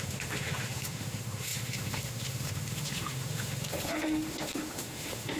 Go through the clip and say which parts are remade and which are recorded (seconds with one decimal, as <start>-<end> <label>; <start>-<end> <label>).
0.0-5.4 remade